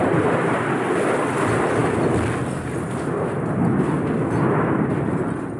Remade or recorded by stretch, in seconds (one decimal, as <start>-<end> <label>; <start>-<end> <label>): 0.0-5.6 recorded